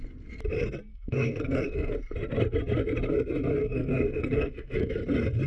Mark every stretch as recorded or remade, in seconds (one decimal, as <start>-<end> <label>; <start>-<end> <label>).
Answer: 0.0-0.9 recorded; 0.9-1.9 remade; 1.9-3.6 recorded; 3.6-4.9 remade; 4.9-5.5 recorded